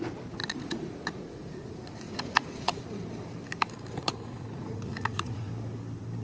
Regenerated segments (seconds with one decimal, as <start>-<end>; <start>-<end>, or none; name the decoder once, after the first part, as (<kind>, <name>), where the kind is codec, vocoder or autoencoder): 0.4-2.8 (vocoder, Vocos); 4.0-5.5